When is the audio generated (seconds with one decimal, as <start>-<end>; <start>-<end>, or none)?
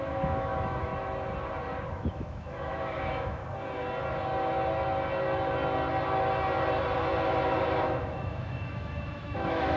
0.0-0.9; 1.9-3.4; 7.8-9.8